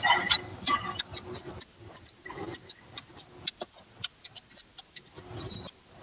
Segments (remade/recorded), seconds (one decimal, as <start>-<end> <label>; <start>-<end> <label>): 0.0-0.5 recorded; 0.5-1.0 remade; 1.0-6.0 recorded

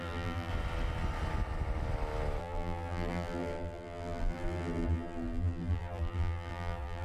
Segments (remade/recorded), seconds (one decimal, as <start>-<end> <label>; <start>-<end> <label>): 0.0-0.5 remade; 0.5-2.4 recorded; 2.4-7.0 remade

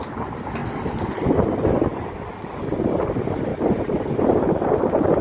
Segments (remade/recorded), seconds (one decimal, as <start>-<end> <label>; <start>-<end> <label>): 0.0-5.2 recorded

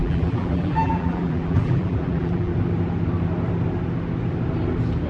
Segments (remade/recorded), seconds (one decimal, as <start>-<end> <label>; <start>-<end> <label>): 0.0-2.5 remade; 2.5-5.1 recorded

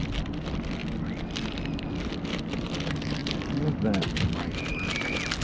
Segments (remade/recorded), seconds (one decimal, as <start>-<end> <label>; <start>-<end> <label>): 0.0-5.4 recorded